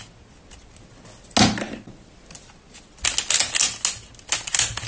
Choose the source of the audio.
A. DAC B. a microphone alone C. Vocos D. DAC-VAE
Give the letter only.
B